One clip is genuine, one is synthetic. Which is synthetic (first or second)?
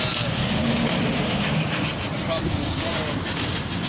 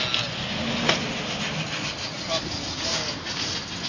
first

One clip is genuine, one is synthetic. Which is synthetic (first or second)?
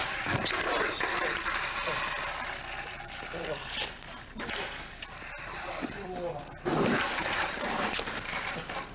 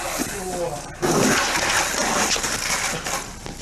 first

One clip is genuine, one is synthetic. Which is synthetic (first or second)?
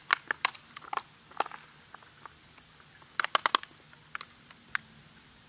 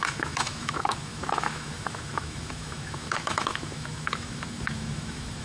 second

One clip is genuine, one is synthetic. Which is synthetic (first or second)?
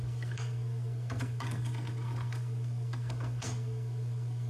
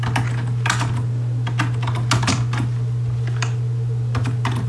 first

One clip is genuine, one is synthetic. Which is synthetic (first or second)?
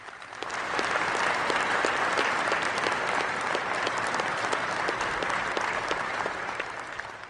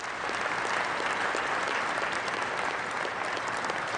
first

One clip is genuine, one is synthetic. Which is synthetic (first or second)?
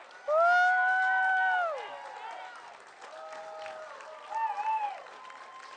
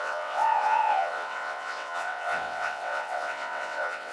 second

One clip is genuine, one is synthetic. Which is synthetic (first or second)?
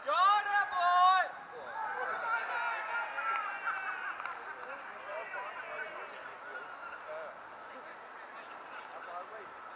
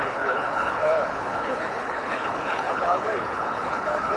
second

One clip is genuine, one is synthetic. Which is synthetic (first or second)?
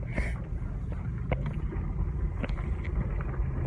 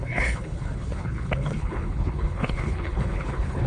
second